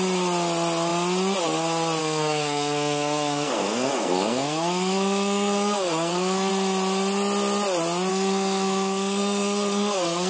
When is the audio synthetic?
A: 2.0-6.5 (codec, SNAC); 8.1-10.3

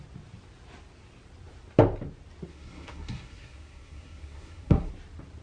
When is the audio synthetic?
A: 2.5-4.9 (codec, SNAC)

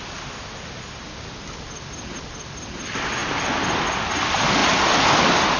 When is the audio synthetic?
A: none

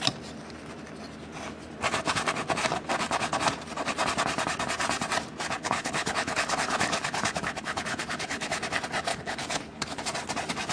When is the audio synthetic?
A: 5.6-8.6 (codec, HILCodec); 9.1-10.0

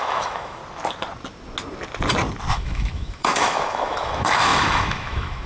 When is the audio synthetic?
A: 0.0-0.6 (autoencoder, DAC-VAE); 2.5-5.5

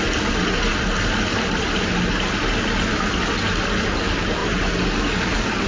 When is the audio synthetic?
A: none

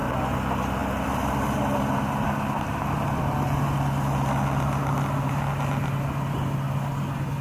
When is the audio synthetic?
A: none

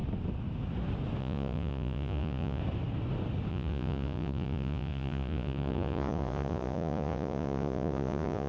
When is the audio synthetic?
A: 1.2-2.6 (vocoder, Vocos); 3.5-8.5